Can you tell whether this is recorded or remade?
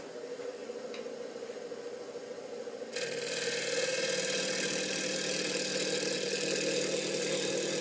recorded